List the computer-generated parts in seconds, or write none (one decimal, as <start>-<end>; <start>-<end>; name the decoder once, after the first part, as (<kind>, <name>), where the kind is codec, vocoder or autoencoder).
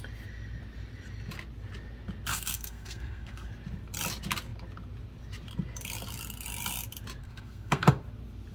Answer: 2.3-3.5 (codec, SNAC); 7.2-8.0